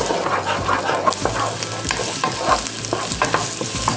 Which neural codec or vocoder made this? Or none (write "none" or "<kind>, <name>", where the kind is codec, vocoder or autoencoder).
none